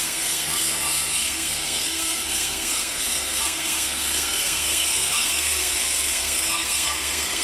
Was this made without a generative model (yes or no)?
no